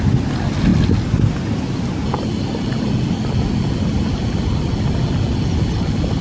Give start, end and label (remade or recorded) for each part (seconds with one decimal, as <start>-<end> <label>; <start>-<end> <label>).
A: 0.0-6.2 recorded